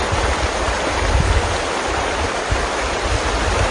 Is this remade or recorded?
recorded